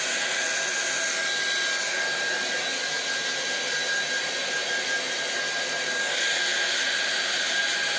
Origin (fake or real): real